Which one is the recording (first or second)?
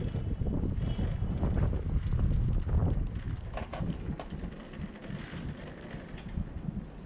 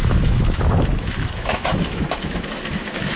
first